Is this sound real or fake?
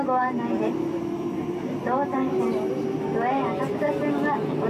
real